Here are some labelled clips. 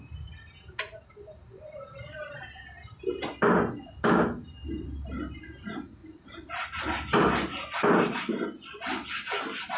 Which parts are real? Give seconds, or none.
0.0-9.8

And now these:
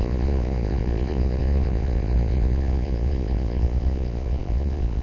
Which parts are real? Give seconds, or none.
none

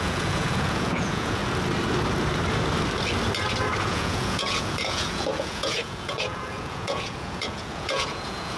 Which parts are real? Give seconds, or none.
1.4-3.8

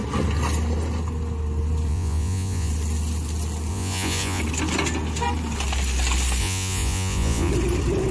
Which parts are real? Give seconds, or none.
0.0-1.9; 2.7-3.7; 4.4-6.4; 7.5-8.1

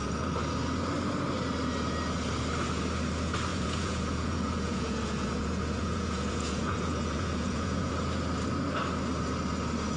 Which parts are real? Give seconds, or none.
0.0-3.5; 7.9-10.0

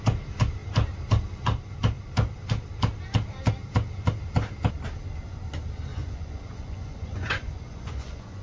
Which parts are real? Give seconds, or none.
0.0-5.9

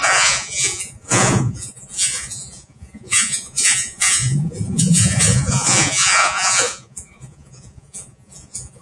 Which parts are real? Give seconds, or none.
none